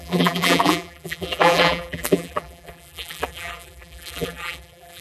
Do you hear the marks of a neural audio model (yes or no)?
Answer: yes